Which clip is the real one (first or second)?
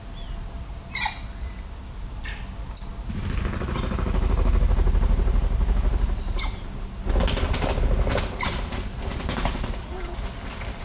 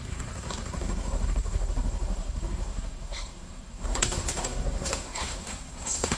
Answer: first